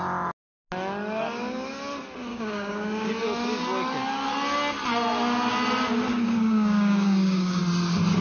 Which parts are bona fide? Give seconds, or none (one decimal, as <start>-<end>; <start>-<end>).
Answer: 0.0-2.3; 3.1-6.1; 7.6-8.2